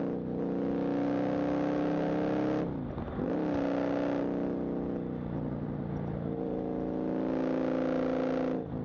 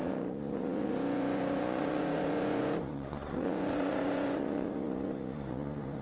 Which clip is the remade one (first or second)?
second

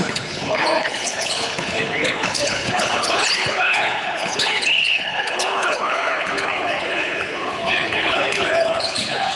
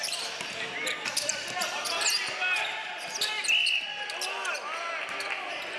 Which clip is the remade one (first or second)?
first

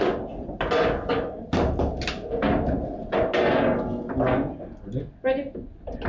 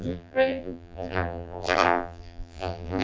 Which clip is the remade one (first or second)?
second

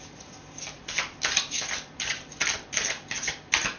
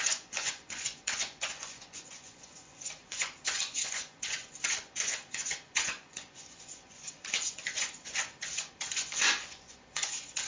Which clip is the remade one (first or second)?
second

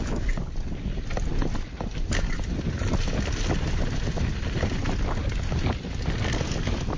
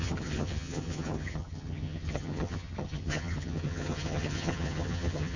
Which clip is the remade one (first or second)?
second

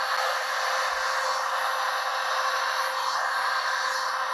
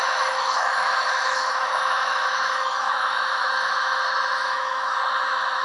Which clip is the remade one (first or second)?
second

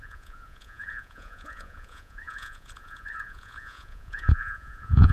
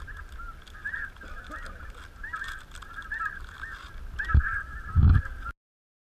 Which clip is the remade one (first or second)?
first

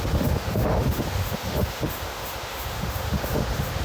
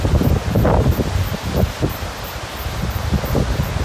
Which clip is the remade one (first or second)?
first